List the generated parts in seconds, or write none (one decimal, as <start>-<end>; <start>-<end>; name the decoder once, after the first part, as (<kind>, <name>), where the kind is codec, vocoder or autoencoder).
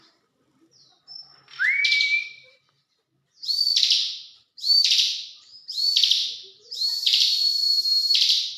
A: 0.0-8.6 (vocoder, BigVGAN v2)